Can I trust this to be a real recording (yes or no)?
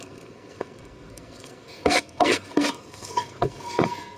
no